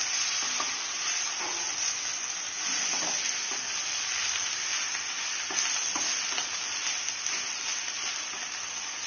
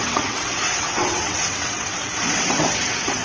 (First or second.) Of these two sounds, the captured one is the first